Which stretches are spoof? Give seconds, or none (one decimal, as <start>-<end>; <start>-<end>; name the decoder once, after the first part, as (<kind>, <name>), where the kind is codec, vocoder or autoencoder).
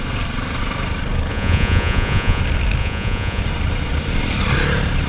1.3-2.4 (vocoder, Vocos); 2.8-3.4